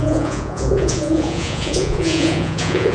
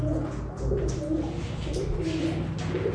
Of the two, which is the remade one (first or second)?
first